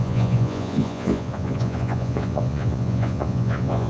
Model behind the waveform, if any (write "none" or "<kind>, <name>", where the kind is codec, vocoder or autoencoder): vocoder, Vocos